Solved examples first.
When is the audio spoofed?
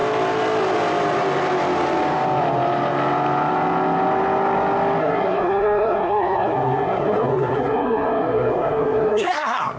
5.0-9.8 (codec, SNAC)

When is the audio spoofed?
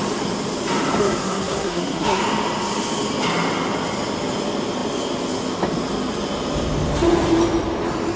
1.0-2.2 (codec, SNAC)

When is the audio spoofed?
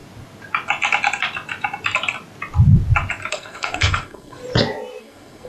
3.3-4.4 (codec, SNAC); 5.0-5.5